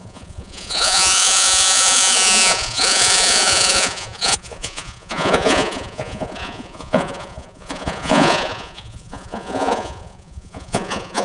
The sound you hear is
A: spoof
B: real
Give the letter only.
A